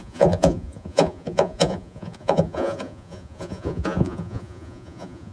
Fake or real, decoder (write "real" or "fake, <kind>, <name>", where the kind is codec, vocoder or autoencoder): fake, vocoder, Vocos